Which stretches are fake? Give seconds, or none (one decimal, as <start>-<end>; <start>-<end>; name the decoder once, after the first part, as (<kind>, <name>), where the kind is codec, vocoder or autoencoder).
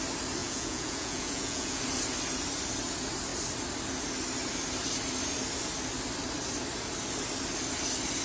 0.4-1.8 (vocoder, Vocos)